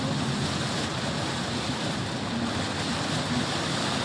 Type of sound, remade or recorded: recorded